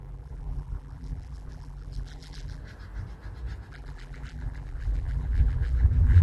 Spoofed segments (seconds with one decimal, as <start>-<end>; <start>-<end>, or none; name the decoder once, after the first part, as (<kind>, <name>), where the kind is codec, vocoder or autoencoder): 0.0-2.6 (vocoder, BigVGAN v2); 3.7-6.2